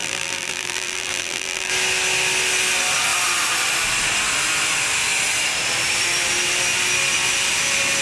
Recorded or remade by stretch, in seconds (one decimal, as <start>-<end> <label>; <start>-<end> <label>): 0.0-1.7 remade; 1.7-8.0 recorded